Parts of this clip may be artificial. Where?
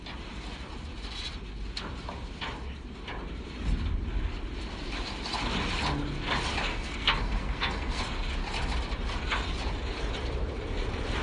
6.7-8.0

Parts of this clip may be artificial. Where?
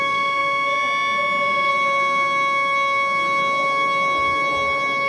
none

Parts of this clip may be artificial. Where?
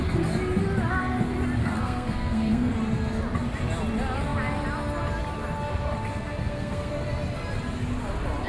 1.6-2.7; 6.1-6.9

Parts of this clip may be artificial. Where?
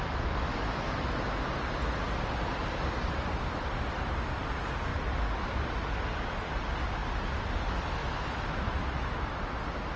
0.5-1.1; 8.0-9.4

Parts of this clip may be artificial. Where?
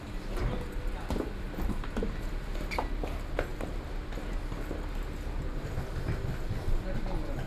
none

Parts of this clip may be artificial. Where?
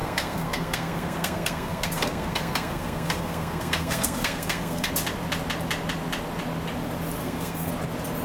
0.0-4.9; 7.2-7.7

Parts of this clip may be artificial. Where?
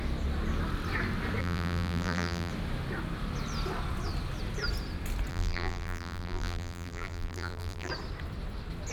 1.4-2.5; 5.3-7.9